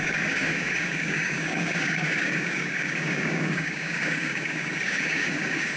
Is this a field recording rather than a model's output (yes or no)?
no